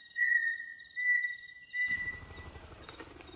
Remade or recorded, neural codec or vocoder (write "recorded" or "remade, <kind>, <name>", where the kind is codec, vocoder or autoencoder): remade, vocoder, BigVGAN v2